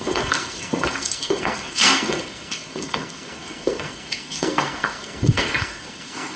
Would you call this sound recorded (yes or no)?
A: no